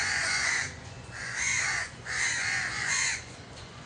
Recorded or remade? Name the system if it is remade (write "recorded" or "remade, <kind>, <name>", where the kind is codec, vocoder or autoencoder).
remade, vocoder, Vocos